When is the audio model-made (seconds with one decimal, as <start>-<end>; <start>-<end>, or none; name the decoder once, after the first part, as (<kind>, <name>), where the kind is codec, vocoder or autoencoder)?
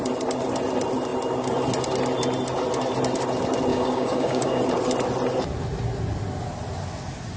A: 3.7-4.6 (codec, DAC)